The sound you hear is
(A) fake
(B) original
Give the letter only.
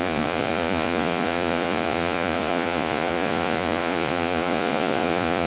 A